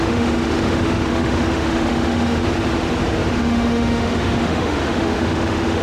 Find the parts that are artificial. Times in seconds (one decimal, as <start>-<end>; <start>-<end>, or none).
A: 0.0-2.4; 3.3-5.8